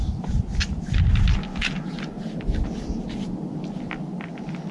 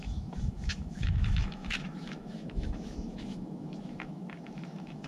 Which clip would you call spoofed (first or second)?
second